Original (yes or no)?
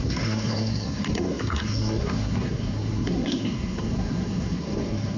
no